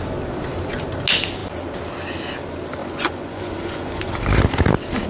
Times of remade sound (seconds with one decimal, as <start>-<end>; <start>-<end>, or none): 2.8-4.1